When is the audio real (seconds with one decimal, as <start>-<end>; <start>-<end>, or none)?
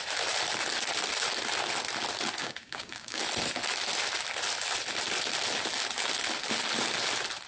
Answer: 0.0-2.4; 3.2-7.5